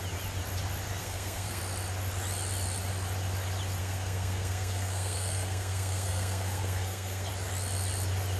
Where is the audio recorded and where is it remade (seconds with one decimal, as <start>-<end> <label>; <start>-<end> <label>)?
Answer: 0.0-1.0 recorded; 1.0-1.6 remade; 1.6-3.8 recorded; 3.8-7.3 remade; 7.3-8.4 recorded